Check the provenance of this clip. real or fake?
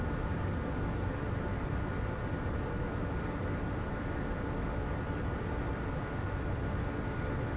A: real